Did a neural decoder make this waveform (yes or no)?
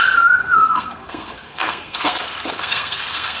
yes